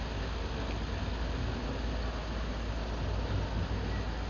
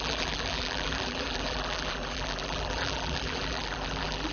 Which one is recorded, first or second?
first